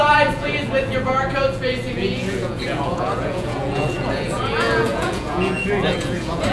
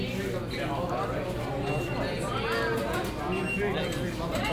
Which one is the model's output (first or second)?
first